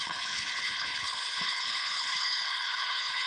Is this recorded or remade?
remade